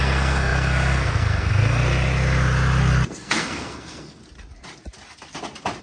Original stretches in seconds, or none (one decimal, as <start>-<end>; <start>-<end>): 1.8-2.8; 4.2-5.8

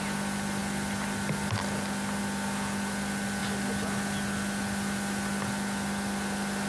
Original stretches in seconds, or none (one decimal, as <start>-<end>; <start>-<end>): 0.0-6.7